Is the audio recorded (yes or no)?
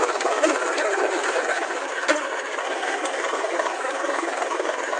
no